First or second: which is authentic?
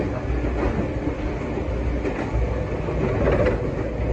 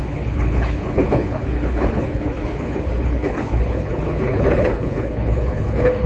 first